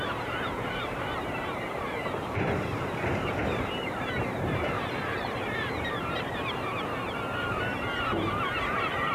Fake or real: fake